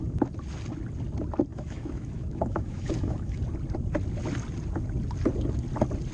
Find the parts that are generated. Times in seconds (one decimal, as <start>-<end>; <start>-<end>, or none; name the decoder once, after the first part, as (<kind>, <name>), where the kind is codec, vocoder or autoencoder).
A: 1.5-3.4 (autoencoder, DAC-VAE)